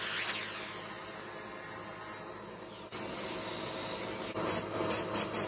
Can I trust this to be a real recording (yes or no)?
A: yes